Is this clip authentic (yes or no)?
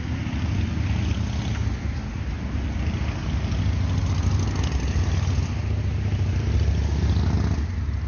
yes